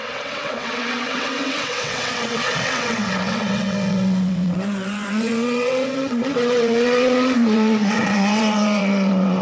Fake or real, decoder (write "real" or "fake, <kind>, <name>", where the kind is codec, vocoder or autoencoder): fake, vocoder, WaveNeXt